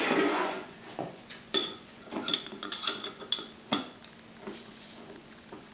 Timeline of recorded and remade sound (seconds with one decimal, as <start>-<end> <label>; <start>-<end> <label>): 0.0-4.0 remade; 4.0-4.6 recorded; 4.6-5.7 remade